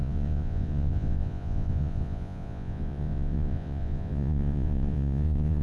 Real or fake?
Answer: fake